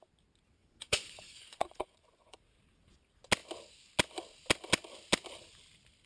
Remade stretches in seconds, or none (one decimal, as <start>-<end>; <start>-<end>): 0.6-2.4